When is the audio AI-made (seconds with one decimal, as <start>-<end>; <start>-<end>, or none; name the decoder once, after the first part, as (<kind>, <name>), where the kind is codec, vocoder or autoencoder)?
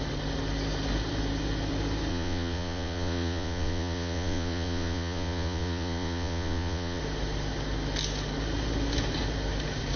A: 2.1-7.0 (vocoder, Vocos)